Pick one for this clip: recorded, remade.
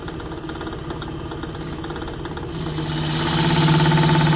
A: recorded